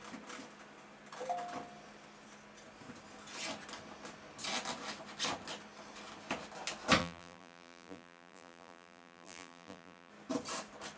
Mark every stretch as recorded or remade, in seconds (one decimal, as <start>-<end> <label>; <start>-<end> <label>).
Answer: 0.0-7.0 recorded; 7.0-10.1 remade; 10.1-11.0 recorded